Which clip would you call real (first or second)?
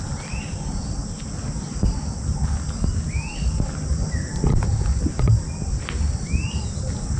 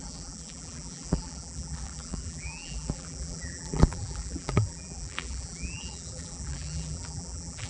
first